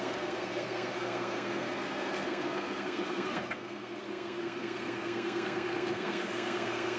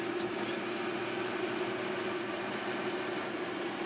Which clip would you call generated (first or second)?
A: first